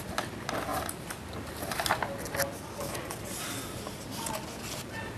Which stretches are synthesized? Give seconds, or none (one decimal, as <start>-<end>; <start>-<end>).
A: none